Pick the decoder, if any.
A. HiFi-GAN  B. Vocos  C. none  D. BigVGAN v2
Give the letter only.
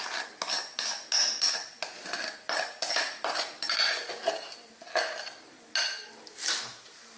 C